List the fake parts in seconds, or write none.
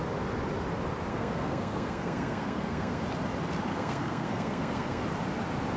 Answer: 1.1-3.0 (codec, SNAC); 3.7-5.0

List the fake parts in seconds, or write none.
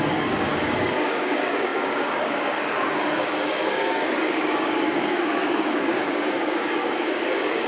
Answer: 0.0-7.7 (codec, DAC)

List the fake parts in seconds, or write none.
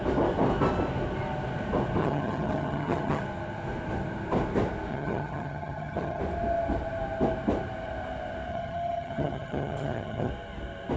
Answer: 2.0-3.2 (vocoder, HiFi-GAN); 4.9-6.2; 8.5-10.3